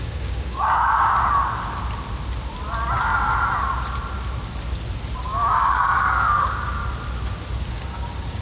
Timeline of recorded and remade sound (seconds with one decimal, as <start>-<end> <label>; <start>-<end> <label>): 0.0-0.7 remade; 0.7-5.5 recorded; 5.5-6.8 remade; 6.8-7.7 recorded; 7.7-8.4 remade